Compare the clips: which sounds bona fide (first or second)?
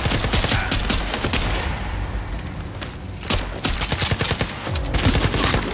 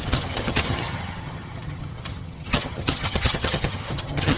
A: first